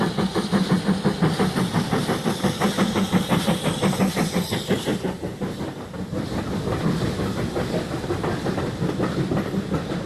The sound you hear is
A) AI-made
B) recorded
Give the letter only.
A